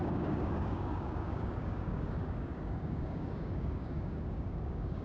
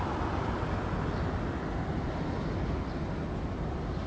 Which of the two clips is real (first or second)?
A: second